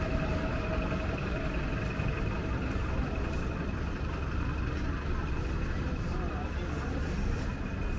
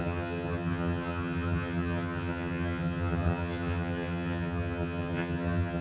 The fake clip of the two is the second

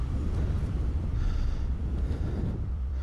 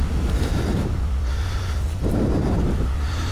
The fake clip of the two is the second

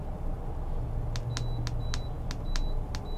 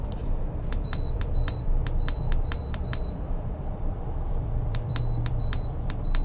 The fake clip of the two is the second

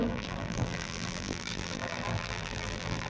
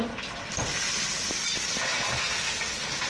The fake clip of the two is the first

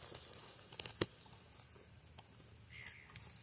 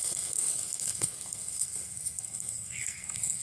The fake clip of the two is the second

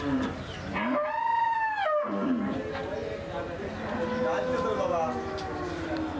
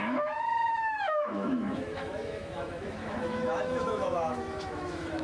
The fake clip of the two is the second